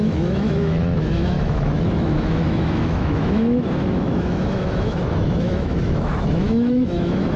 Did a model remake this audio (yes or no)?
yes